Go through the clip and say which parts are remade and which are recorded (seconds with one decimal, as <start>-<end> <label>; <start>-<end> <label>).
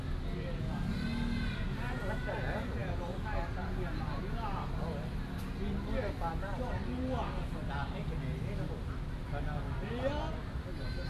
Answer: 0.0-11.1 recorded